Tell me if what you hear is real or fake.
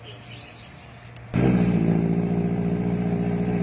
real